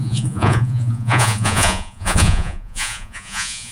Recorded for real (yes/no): no